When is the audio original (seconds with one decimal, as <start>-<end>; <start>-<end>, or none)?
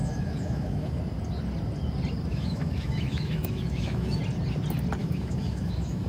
1.0-2.3; 4.2-5.0